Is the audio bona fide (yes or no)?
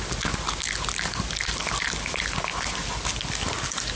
yes